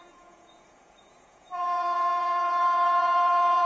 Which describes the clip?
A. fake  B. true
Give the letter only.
A